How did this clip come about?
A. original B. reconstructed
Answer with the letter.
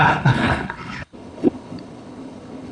B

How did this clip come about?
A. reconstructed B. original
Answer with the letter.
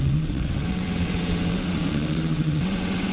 A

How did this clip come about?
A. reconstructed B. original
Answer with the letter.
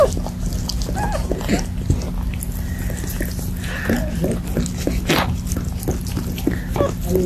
B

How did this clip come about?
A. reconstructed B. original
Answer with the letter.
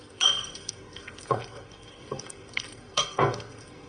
A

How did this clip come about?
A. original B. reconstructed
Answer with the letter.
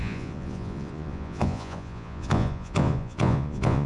B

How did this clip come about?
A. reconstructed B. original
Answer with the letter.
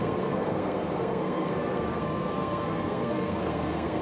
A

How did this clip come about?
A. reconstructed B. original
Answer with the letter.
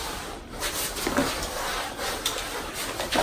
A